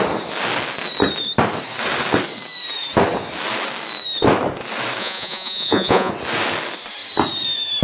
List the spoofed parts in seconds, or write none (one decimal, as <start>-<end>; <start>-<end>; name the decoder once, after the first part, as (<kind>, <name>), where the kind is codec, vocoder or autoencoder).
5.0-6.1 (vocoder, Vocos)